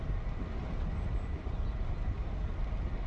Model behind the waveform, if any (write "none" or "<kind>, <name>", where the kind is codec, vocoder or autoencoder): none